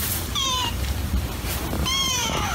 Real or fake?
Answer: fake